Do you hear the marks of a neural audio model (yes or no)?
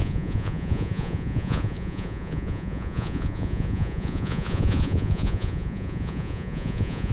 yes